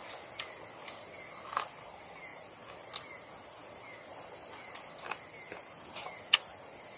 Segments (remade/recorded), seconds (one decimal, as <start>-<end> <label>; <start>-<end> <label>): 0.0-2.3 recorded; 2.3-3.0 remade; 3.0-3.6 recorded; 3.6-6.6 remade; 6.6-7.0 recorded